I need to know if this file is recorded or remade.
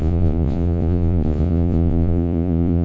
remade